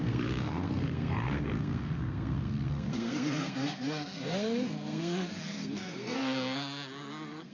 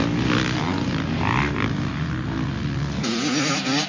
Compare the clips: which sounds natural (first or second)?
second